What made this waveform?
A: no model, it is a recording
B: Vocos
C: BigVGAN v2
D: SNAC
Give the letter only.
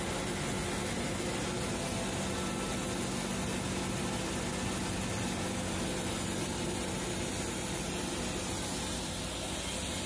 A